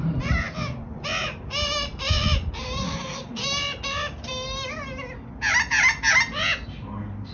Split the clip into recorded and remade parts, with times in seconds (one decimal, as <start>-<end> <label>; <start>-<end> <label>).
0.0-7.3 recorded